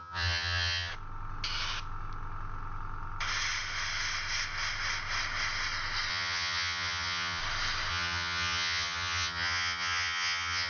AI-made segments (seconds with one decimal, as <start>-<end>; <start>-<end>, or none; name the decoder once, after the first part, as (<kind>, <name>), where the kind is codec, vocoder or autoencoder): 0.0-0.9 (vocoder, HiFi-GAN); 6.1-7.4; 7.9-10.7